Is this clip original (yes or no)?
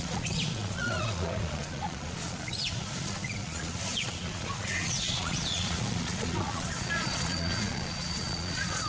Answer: no